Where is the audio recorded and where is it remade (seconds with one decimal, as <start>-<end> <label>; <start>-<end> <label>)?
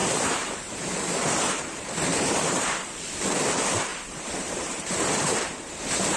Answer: 0.0-1.6 remade; 1.6-2.1 recorded; 2.1-3.0 remade; 3.0-3.9 recorded; 3.9-5.8 remade; 5.8-6.2 recorded